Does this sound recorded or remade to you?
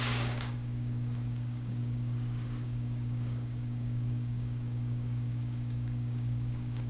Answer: remade